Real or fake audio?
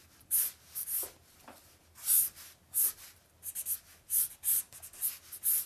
fake